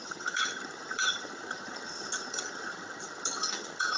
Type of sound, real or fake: fake